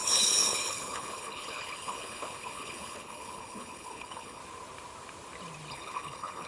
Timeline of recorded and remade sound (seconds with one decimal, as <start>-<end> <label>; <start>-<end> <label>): 0.0-4.4 remade; 4.4-5.7 recorded; 5.7-6.5 remade